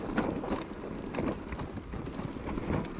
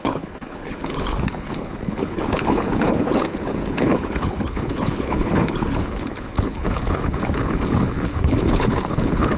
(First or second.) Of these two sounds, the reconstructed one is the second